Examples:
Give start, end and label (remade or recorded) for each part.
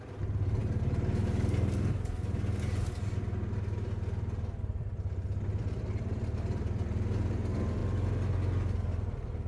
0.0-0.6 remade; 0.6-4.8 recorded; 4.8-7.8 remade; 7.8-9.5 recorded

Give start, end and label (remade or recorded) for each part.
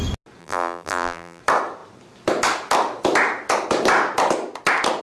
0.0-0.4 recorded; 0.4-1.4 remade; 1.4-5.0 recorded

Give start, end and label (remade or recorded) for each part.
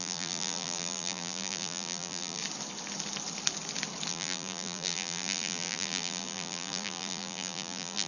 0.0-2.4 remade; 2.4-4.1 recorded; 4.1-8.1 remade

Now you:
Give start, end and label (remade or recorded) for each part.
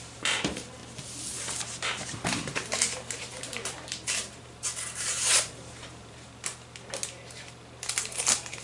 0.0-0.8 remade; 0.8-1.7 recorded; 1.7-6.5 remade; 6.5-7.9 recorded; 7.9-8.6 remade